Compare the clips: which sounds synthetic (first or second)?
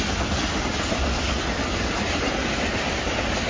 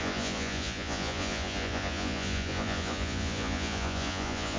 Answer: second